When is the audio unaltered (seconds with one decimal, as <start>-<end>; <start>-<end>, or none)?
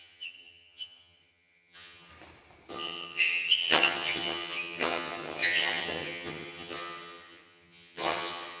2.1-2.7